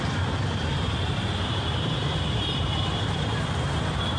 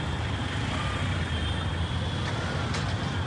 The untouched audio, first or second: second